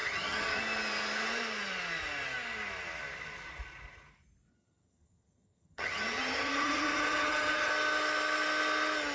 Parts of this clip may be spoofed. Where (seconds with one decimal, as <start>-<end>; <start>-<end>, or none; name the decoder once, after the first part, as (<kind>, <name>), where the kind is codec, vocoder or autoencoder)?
0.0-0.6 (vocoder, HiFi-GAN); 4.5-7.7